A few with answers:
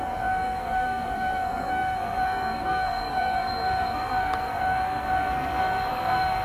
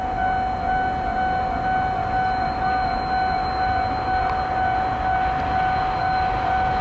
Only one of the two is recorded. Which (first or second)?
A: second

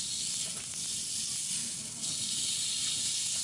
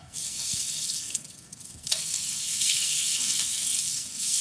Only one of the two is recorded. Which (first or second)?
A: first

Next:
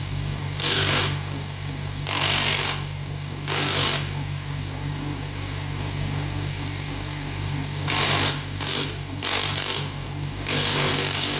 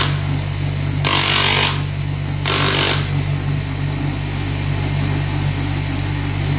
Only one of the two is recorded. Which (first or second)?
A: second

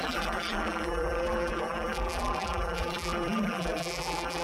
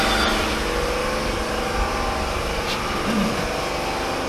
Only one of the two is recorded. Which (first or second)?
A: second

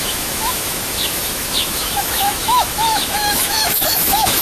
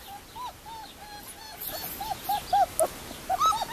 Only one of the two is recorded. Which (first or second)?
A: second